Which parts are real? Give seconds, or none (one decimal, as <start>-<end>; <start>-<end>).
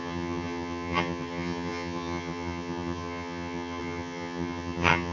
none